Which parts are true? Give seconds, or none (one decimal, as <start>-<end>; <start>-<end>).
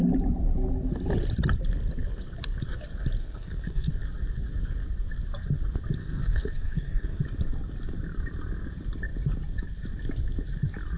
0.0-3.2; 3.9-6.0; 7.2-11.0